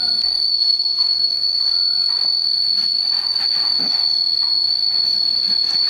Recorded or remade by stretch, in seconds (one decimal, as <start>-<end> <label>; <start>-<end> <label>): 0.0-0.5 recorded; 0.5-1.6 remade; 1.6-5.9 recorded